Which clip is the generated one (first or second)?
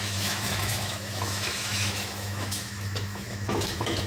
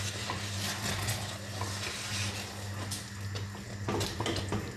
first